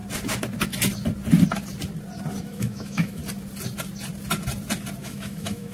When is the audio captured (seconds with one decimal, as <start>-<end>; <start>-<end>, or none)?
0.0-2.4; 3.2-5.0